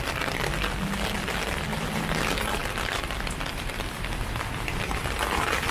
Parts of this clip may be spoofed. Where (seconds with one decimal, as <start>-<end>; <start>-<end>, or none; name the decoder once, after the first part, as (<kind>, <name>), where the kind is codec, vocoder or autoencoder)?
none